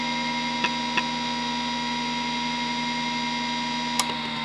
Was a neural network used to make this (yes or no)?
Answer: no